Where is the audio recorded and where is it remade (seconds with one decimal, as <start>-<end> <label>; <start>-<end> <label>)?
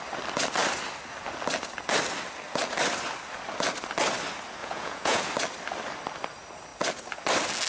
0.0-4.6 recorded; 4.6-5.2 remade; 5.2-7.7 recorded